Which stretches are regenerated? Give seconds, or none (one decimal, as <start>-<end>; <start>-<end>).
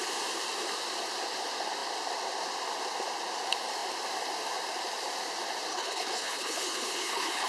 5.7-7.5